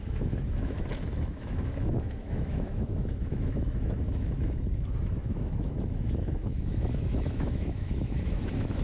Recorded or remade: remade